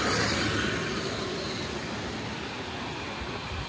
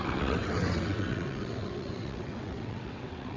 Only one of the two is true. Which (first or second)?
first